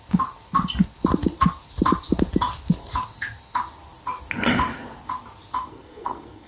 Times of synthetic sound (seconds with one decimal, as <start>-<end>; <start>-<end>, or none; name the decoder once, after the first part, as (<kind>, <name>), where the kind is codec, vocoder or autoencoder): 5.6-6.5 (codec, SNAC)